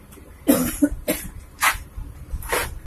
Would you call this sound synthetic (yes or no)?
yes